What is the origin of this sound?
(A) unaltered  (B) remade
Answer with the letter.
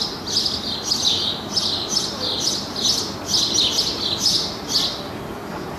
A